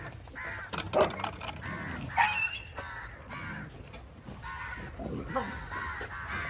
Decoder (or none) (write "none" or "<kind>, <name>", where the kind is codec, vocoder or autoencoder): none